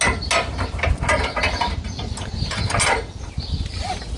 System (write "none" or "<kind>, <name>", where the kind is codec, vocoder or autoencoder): none